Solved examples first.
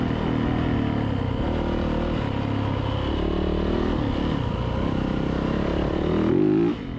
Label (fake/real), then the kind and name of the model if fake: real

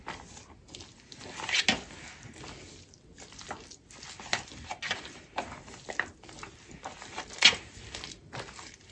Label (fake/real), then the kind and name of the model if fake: real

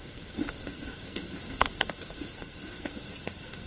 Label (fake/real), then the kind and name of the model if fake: fake, codec, SNAC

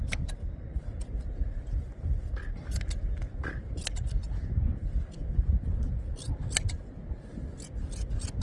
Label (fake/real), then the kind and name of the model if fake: real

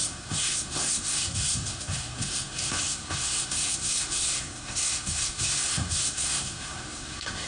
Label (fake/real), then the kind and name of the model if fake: fake, codec, SNAC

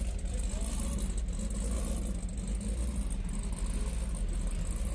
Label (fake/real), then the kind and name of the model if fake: real